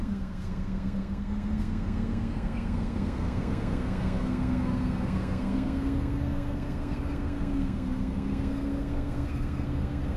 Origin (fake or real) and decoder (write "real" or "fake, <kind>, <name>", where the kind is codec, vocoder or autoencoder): fake, codec, SNAC